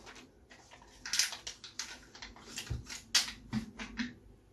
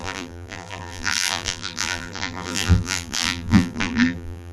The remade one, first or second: second